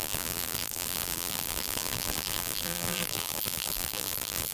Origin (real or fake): fake